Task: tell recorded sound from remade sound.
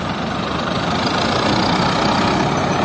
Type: recorded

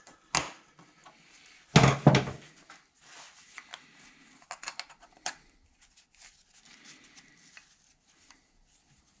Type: recorded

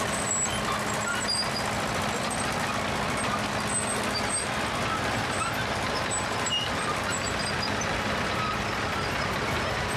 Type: recorded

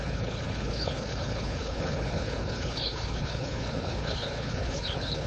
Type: remade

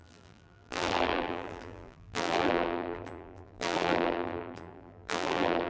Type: remade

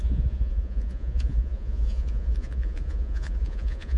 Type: remade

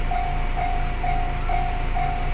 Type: recorded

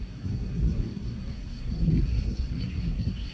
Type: remade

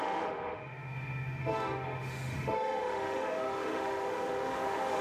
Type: remade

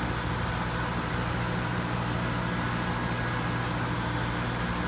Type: recorded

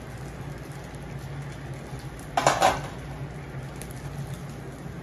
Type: recorded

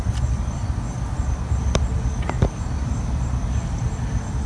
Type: recorded